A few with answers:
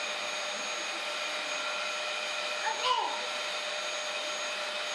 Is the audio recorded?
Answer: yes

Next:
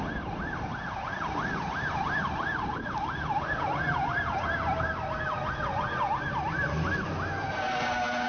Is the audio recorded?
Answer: yes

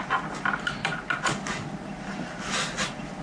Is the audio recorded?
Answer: yes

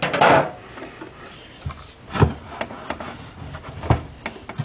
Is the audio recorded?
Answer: yes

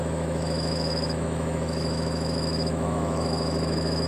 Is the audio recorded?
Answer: no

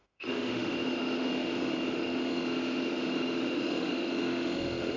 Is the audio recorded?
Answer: no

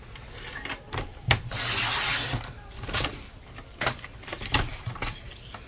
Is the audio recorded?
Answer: yes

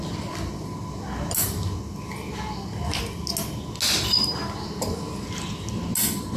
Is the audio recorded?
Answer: yes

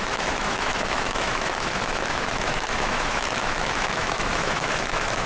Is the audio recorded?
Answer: no